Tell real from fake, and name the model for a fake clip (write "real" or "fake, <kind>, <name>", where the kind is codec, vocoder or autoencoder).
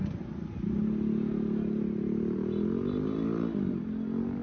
real